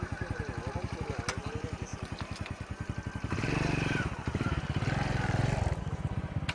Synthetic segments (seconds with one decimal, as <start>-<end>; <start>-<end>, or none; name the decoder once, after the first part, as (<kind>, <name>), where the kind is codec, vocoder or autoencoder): none